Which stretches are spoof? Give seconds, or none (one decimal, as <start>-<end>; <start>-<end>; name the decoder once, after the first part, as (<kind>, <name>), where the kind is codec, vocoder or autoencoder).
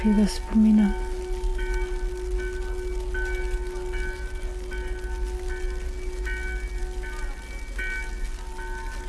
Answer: none